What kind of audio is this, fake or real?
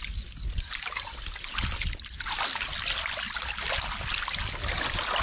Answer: real